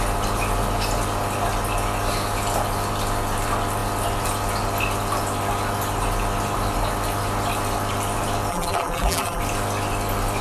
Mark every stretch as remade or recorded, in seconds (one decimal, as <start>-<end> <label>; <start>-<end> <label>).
0.0-8.5 recorded; 8.5-9.4 remade; 9.4-10.4 recorded